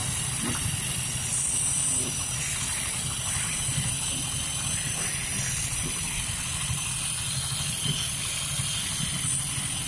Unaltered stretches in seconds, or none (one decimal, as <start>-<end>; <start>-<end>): 3.9-9.9